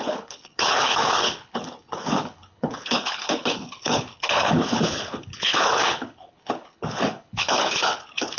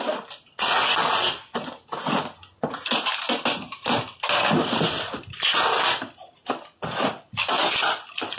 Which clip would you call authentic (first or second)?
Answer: second